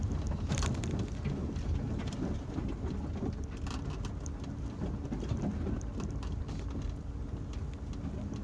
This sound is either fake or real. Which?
real